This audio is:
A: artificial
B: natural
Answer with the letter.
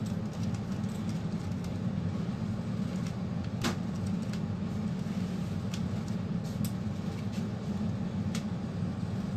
B